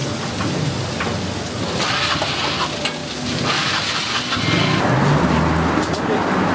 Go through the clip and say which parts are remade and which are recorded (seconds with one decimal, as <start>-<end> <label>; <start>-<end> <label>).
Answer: 0.0-6.5 recorded